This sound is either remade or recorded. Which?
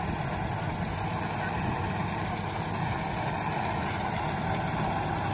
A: recorded